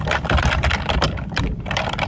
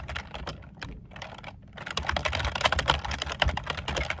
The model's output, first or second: first